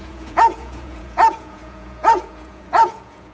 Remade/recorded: remade